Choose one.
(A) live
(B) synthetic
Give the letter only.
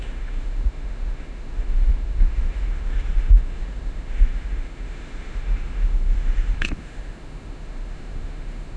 B